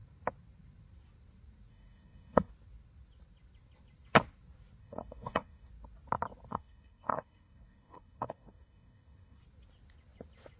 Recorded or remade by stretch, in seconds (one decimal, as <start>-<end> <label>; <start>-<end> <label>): 0.0-1.7 recorded; 1.7-2.5 remade; 2.5-4.8 recorded; 4.8-5.7 remade; 5.7-6.5 recorded; 6.5-9.4 remade; 9.4-10.6 recorded

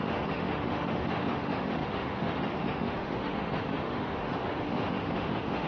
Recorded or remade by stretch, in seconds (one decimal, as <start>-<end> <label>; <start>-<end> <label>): 0.0-5.7 remade

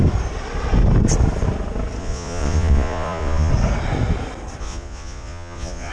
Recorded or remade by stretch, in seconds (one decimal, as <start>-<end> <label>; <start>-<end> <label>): 0.0-2.0 recorded; 2.0-3.5 remade; 3.5-4.6 recorded; 4.6-5.9 remade

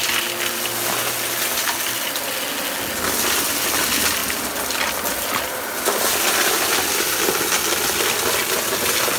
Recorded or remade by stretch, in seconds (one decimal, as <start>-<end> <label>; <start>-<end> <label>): 0.0-9.2 recorded